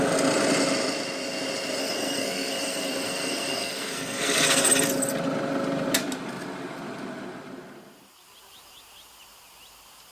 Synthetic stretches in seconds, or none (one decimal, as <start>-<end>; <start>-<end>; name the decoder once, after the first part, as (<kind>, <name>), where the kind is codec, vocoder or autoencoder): 1.8-4.7 (codec, SNAC)